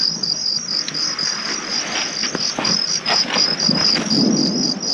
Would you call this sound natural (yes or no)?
yes